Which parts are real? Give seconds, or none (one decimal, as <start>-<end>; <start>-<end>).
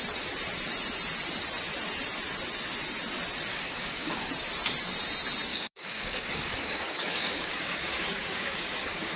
0.0-3.5; 4.3-5.5